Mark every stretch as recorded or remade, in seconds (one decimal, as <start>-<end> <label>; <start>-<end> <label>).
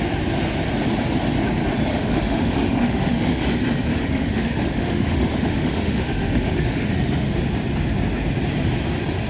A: 0.0-1.9 recorded; 1.9-3.4 remade; 3.4-3.9 recorded; 3.9-7.5 remade; 7.5-9.3 recorded